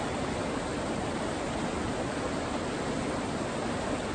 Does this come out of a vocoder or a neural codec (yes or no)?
no